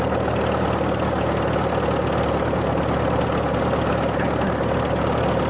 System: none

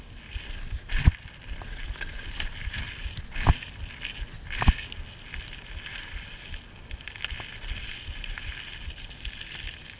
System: none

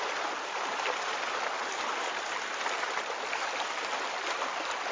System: none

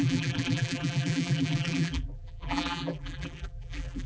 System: vocoder, BigVGAN v2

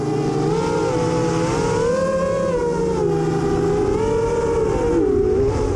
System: none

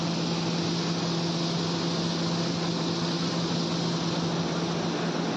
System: none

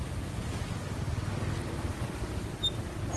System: none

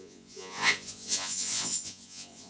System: vocoder, Vocos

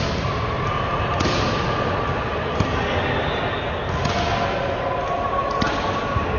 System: none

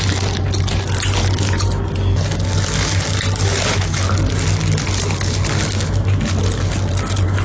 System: none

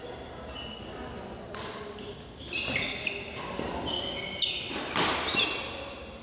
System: none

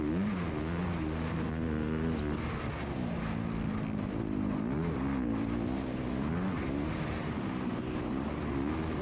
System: none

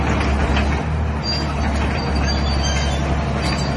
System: none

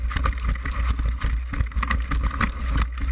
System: none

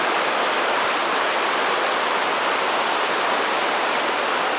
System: none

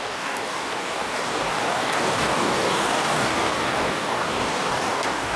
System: codec, DAC